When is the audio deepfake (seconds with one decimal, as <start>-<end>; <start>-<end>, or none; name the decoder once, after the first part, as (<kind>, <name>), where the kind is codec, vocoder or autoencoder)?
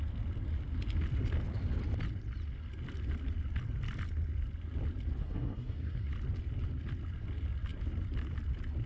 5.2-6.1 (codec, SNAC)